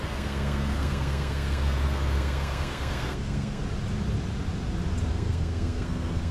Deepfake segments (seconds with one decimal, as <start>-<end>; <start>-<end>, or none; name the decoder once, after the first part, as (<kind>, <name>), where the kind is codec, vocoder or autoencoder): 0.0-3.6 (codec, SNAC); 5.1-6.3